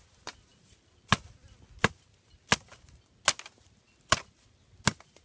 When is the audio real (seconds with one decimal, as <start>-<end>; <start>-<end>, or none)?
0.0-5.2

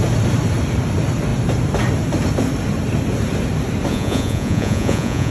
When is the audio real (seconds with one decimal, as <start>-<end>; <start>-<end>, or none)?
0.0-3.9

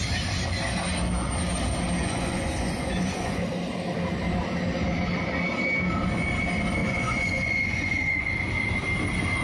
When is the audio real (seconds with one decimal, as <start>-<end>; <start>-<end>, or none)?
0.0-2.0; 3.5-6.8; 8.3-9.4

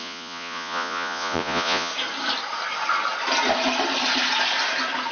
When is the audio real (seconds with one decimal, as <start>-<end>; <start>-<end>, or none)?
1.9-5.1